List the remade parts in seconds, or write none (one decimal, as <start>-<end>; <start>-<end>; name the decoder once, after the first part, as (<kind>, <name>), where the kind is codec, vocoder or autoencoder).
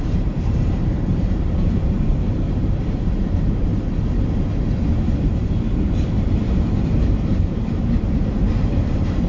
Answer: 0.0-3.7 (vocoder, BigVGAN v2); 4.9-9.3